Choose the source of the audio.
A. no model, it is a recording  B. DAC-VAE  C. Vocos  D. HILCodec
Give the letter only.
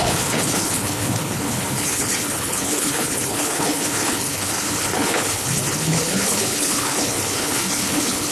D